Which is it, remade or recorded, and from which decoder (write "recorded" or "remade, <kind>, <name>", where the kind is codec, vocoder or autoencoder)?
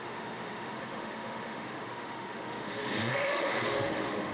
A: remade, autoencoder, DAC-VAE